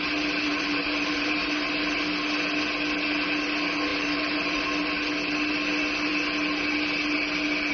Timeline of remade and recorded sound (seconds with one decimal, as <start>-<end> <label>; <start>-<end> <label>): 0.0-0.5 recorded; 0.5-1.7 remade; 1.7-3.9 recorded; 3.9-4.6 remade; 4.6-7.7 recorded